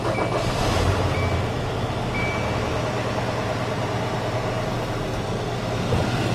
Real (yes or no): yes